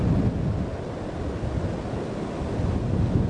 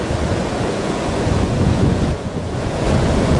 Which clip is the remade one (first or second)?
second